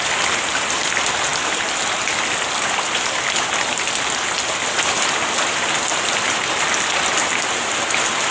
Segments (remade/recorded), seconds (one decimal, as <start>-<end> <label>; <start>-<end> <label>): 0.0-8.3 recorded